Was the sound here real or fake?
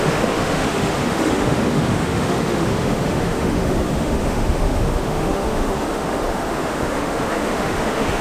fake